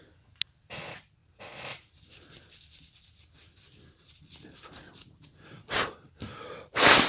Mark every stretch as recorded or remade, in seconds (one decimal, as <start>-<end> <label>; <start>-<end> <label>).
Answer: 0.0-1.2 recorded; 1.2-2.0 remade; 2.0-7.1 recorded